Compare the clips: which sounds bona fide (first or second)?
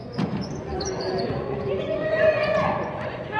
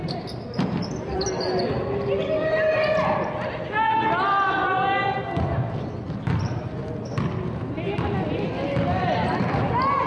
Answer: second